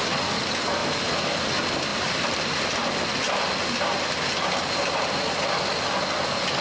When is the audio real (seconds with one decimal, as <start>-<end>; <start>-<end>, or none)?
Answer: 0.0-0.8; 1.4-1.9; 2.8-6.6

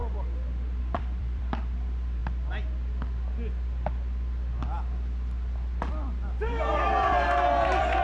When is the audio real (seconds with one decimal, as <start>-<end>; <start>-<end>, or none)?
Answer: 0.0-0.8; 2.2-5.9

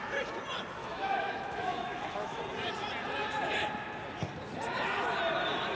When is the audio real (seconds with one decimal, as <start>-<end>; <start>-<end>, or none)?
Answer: 0.0-0.8; 2.4-5.7

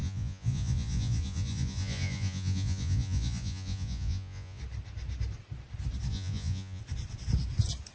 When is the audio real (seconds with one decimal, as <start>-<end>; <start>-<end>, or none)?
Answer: 4.6-6.1; 6.8-7.9

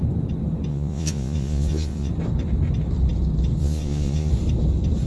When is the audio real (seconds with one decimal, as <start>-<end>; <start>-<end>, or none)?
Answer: 0.0-0.7; 2.1-3.6; 4.3-5.1

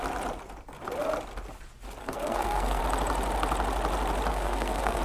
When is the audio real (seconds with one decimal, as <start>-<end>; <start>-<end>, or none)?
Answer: 0.0-2.0; 2.8-4.3

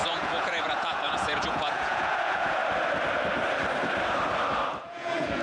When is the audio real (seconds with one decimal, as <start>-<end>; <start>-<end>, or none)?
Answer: 2.6-4.8